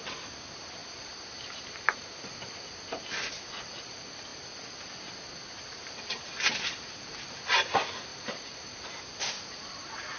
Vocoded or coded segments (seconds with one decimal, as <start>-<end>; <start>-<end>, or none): 0.8-3.5; 4.3-4.9; 8.1-8.8